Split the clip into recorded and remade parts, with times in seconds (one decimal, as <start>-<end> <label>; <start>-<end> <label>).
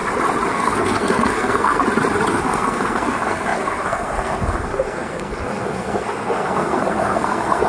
0.0-0.5 recorded; 0.5-1.8 remade; 1.8-2.3 recorded; 2.3-7.7 remade